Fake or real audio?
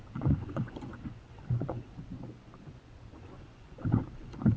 fake